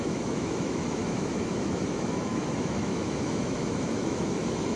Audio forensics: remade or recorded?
remade